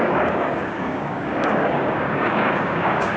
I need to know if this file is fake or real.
fake